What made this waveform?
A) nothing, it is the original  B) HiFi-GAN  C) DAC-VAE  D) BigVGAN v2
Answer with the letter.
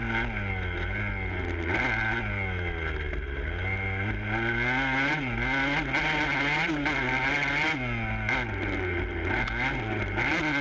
A